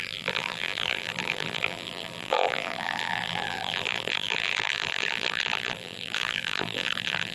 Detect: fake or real fake